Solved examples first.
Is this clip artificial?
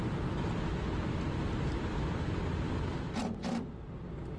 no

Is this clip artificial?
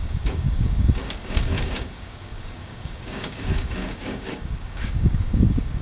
yes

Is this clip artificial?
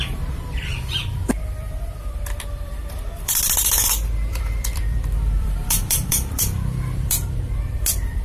yes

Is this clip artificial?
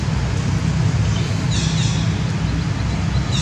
no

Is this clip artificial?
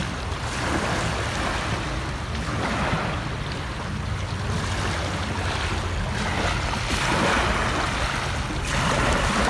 no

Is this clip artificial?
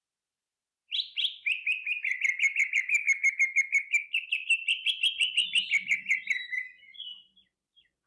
no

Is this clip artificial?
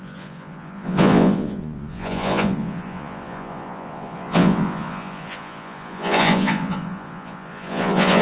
yes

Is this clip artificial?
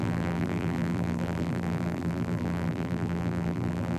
yes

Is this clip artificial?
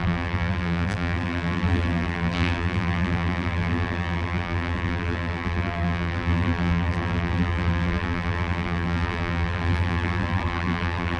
yes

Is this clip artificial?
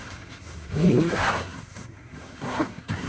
yes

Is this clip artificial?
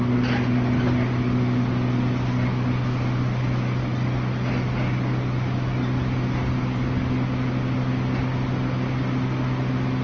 no